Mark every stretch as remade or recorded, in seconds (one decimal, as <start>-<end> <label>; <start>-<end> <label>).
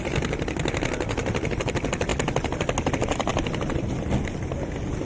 0.0-5.0 recorded